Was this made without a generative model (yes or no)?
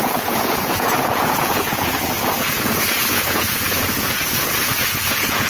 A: no